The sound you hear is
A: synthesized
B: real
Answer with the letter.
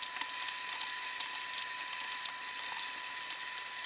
B